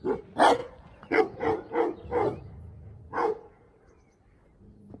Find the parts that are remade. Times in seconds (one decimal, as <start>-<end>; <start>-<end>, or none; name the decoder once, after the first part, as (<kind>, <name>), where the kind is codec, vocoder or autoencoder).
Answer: 0.6-1.2 (vocoder, Vocos)